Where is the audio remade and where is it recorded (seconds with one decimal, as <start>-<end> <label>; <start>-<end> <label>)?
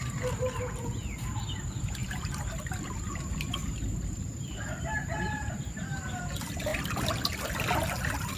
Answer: 0.0-2.0 recorded; 2.0-6.2 remade; 6.2-8.4 recorded